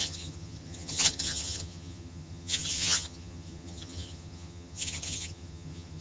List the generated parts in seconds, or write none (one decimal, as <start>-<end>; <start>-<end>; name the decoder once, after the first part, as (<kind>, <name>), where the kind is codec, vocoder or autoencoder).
0.0-6.0 (vocoder, HiFi-GAN)